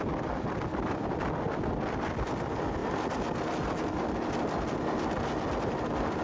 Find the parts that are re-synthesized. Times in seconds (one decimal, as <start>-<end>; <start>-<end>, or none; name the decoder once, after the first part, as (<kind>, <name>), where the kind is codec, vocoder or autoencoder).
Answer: none